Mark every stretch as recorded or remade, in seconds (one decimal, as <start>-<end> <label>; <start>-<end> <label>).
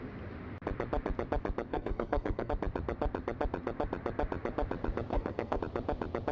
0.0-1.7 recorded; 1.7-2.5 remade; 2.5-5.1 recorded; 5.1-5.6 remade; 5.6-6.3 recorded